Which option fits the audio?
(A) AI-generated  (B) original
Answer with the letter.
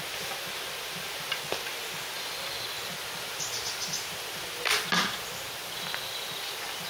B